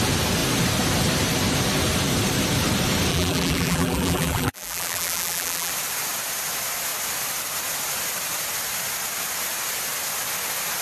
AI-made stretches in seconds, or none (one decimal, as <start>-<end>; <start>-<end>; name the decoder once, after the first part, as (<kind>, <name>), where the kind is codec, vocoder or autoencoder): 3.1-5.7 (vocoder, BigVGAN v2)